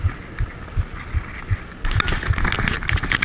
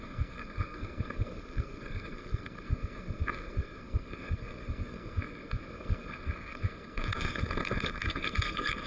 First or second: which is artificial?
second